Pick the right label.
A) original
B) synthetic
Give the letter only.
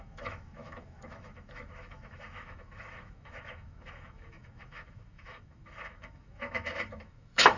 B